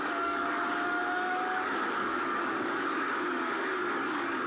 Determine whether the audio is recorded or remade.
remade